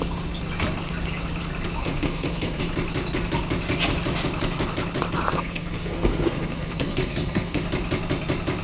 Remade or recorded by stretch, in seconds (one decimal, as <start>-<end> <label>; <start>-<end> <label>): 0.0-1.8 recorded; 1.8-2.6 remade; 2.6-5.3 recorded; 5.3-7.6 remade; 7.6-8.6 recorded